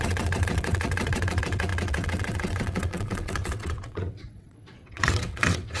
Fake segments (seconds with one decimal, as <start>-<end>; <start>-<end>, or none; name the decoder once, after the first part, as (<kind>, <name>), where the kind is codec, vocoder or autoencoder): 0.0-5.8 (vocoder, WaveNeXt)